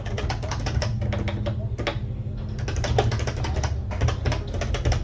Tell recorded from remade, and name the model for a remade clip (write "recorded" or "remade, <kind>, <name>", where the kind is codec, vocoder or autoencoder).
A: recorded